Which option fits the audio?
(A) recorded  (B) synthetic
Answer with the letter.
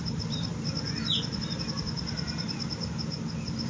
A